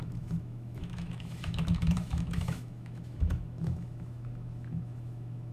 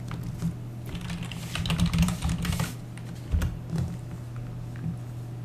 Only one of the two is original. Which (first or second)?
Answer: second